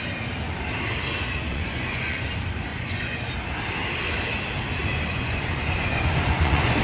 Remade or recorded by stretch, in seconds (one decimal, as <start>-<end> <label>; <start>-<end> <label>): 0.0-1.5 recorded; 1.5-2.3 remade; 2.3-2.7 recorded; 2.7-3.2 remade; 3.2-4.8 recorded; 4.8-6.8 remade